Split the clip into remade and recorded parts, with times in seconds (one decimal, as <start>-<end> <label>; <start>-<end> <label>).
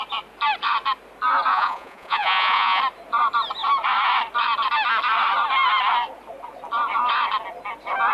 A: 0.0-1.5 recorded; 1.5-2.8 remade; 2.8-8.1 recorded